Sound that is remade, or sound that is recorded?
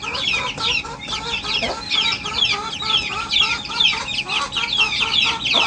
recorded